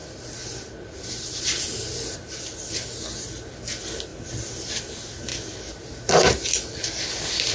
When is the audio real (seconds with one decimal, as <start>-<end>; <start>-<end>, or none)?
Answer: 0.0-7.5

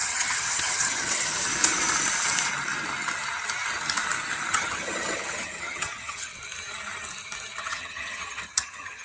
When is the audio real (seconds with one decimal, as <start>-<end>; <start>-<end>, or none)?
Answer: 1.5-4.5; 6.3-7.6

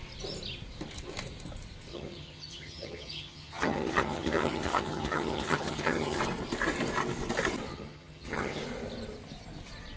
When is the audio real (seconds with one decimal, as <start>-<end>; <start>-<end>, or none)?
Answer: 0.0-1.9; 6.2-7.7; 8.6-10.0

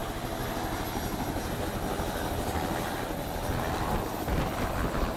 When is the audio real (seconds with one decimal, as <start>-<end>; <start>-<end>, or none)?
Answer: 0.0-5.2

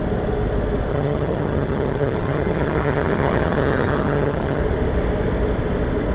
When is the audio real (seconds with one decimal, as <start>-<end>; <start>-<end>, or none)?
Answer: 0.0-0.9; 4.6-6.1

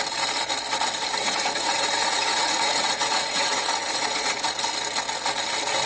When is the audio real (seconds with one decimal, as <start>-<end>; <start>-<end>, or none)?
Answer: 0.0-1.1; 4.5-5.9